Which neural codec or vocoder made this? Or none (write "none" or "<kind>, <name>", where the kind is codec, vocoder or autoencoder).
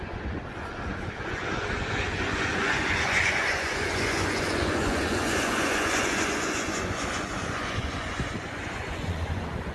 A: vocoder, Vocos